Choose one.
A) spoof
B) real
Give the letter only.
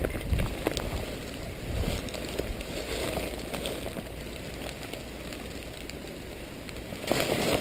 B